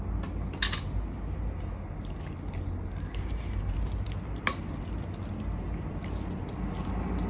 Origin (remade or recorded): recorded